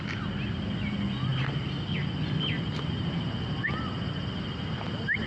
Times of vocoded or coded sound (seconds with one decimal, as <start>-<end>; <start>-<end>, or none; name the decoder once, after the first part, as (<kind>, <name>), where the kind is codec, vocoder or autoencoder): none